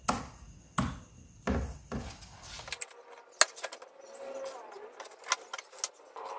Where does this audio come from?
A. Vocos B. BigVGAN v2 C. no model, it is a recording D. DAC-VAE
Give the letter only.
C